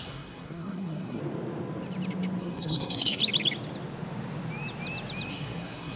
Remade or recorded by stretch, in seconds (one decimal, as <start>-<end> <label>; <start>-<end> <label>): 0.0-1.2 remade; 1.2-2.4 recorded; 2.4-3.2 remade; 3.2-5.3 recorded; 5.3-6.0 remade